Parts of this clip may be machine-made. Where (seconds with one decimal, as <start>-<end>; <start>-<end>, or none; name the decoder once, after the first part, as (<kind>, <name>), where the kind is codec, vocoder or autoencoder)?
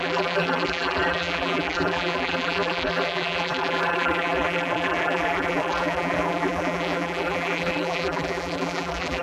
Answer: 0.0-9.2 (vocoder, BigVGAN v2)